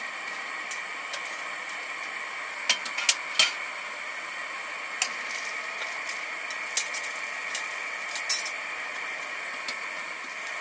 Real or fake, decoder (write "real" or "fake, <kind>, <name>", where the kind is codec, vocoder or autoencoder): real